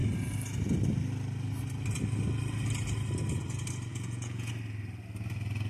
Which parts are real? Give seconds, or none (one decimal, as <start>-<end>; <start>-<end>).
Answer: 0.0-3.9; 4.5-5.7